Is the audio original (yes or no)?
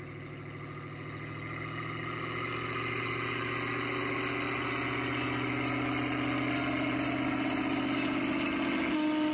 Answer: yes